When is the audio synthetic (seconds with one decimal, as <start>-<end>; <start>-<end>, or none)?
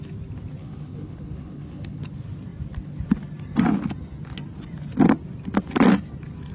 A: 0.6-2.0